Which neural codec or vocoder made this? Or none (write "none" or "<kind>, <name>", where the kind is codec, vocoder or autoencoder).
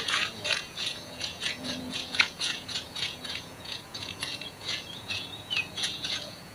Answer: vocoder, Vocos